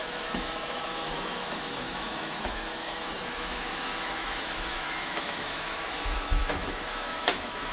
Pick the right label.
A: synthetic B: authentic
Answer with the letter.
A